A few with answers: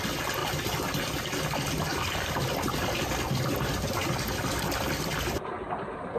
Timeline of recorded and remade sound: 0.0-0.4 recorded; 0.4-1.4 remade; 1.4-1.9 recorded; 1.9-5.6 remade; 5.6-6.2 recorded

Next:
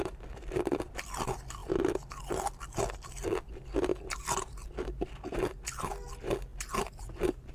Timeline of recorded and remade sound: 0.0-7.5 recorded

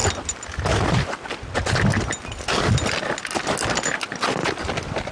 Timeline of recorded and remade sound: 0.0-5.1 recorded

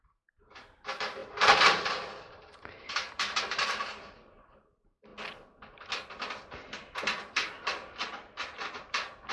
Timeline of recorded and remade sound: 0.0-5.1 remade; 5.1-7.2 recorded; 7.2-9.3 remade

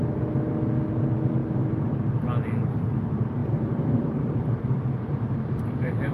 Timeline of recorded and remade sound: 0.0-1.4 recorded; 1.4-2.2 remade; 2.2-3.4 recorded; 3.4-6.1 remade

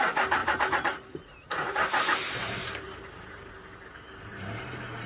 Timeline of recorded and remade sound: 0.0-0.4 recorded; 0.4-3.5 remade; 3.5-5.1 recorded

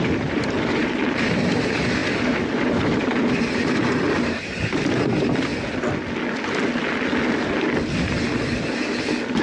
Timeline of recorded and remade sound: 0.0-5.5 remade; 5.5-9.4 recorded